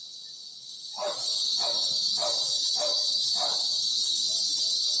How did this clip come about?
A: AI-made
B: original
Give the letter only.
B